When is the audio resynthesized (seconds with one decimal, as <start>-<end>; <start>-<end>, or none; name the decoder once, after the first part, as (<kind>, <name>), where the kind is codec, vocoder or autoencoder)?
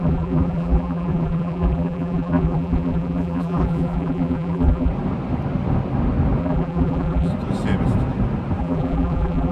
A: 0.0-4.9 (vocoder, BigVGAN v2); 6.4-7.3; 8.6-9.5